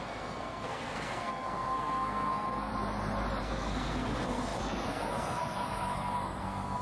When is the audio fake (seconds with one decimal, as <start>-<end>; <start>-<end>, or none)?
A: 0.0-2.7; 3.4-6.8